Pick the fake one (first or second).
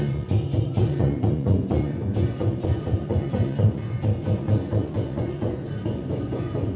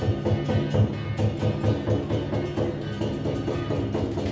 first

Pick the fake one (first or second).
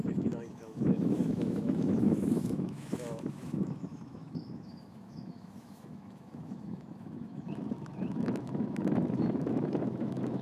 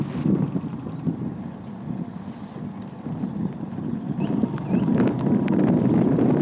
first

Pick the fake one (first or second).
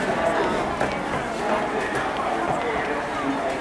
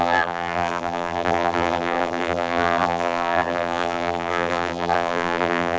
second